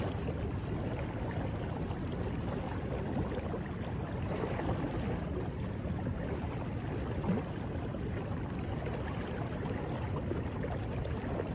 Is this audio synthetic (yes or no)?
no